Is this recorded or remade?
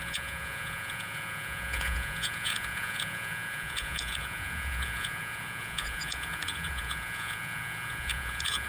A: remade